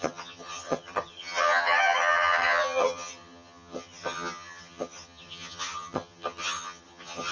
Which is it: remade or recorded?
remade